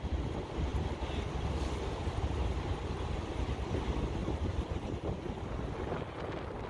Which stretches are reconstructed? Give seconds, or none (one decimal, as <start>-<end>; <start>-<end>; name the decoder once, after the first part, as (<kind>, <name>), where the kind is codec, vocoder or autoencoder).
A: none